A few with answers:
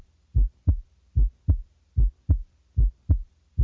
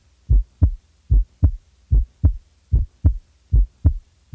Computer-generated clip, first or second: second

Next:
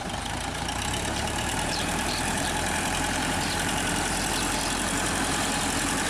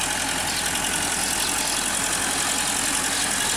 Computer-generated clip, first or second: first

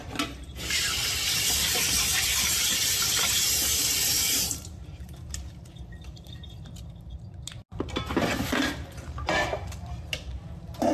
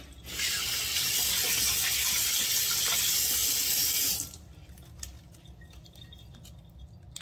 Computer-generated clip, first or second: first